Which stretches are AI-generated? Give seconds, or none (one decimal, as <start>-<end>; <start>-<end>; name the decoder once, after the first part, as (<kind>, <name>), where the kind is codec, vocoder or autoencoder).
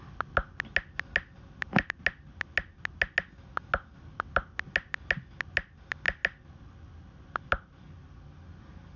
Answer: none